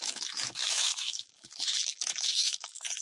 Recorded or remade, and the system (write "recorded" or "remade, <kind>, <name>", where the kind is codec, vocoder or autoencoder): remade, autoencoder, DAC-VAE